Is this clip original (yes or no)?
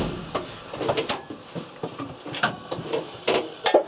no